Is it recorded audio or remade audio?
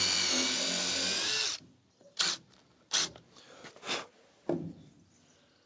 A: recorded